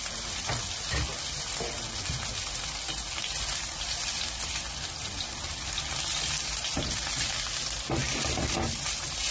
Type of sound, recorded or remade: recorded